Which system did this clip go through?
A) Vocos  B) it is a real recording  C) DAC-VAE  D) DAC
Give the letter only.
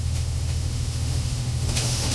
C